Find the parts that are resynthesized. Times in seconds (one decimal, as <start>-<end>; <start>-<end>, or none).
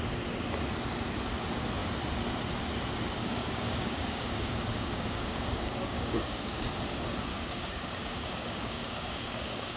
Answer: 3.2-6.7; 7.3-9.8